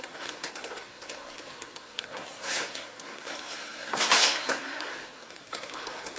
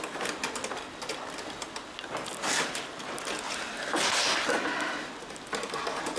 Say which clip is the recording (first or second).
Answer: second